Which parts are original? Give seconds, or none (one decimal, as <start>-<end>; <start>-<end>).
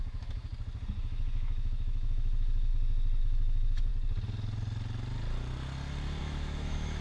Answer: 0.5-1.0; 2.7-3.2; 3.9-6.2